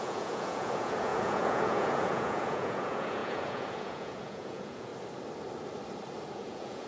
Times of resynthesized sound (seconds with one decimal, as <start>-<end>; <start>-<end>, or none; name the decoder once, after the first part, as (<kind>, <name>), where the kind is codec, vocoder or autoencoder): 0.0-4.9 (vocoder, Vocos); 6.3-6.9